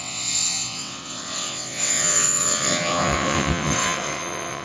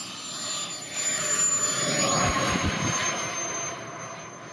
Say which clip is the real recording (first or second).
second